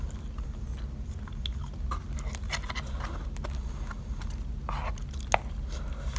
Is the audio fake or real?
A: real